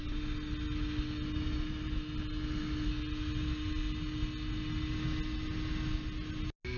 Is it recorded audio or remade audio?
recorded